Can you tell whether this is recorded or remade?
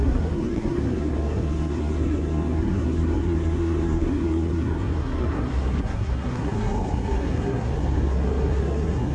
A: remade